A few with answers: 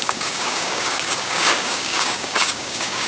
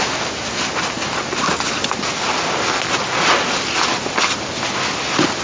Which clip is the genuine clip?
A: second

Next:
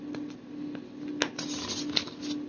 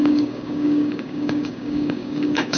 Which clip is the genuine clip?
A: first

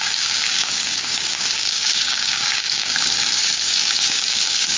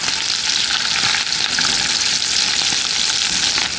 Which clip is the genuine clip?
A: second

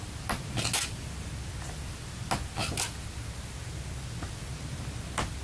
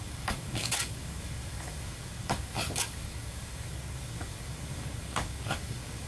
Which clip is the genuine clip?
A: first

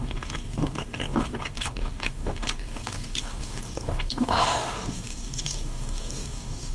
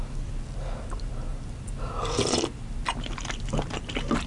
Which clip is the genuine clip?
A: second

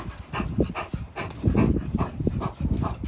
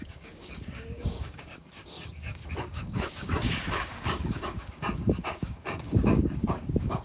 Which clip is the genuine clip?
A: first